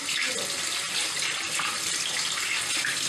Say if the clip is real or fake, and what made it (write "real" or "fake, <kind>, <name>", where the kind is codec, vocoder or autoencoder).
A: real